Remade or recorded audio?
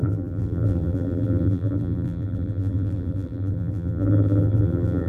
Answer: remade